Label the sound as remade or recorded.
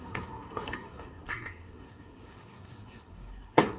remade